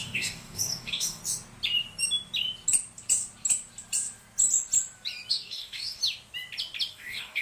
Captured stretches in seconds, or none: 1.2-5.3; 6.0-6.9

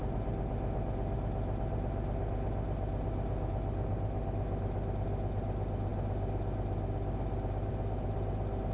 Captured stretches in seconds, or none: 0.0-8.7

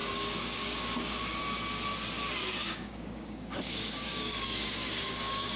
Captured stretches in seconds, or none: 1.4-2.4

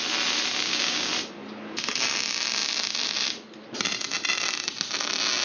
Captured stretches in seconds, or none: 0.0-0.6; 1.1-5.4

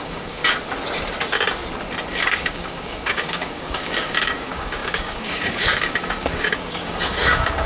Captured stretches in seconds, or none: 0.4-2.2

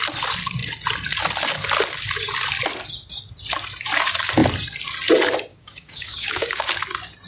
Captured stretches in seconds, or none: 0.0-5.5; 6.7-7.3

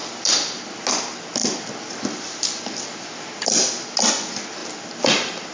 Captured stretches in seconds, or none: 0.0-5.5